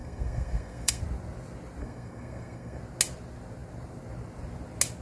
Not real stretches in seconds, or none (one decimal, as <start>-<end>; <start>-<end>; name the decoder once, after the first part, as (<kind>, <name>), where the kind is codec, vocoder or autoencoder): 0.0-1.0 (codec, SNAC); 1.8-2.8